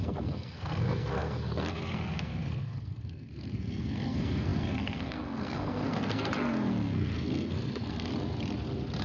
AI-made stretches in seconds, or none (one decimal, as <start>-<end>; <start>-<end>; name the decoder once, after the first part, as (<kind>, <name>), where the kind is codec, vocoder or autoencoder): 0.0-8.1 (codec, SNAC)